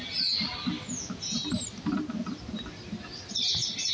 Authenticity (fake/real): real